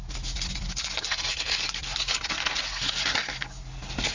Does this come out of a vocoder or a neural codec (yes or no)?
no